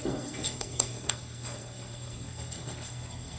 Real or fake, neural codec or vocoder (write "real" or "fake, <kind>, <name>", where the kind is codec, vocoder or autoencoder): fake, codec, SNAC